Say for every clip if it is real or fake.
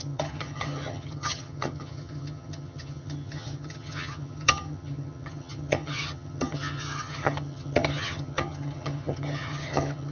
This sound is fake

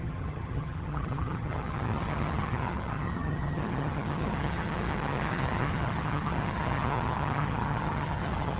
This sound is fake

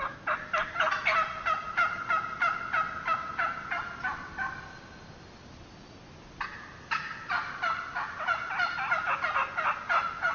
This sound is real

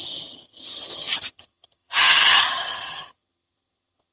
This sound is fake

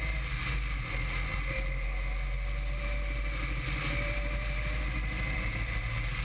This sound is real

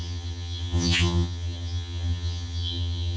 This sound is fake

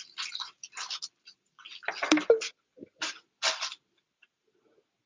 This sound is real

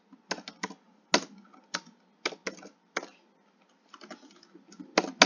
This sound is real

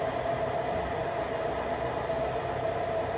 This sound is real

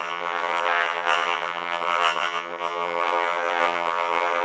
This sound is fake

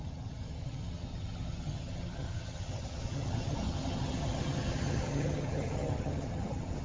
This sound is fake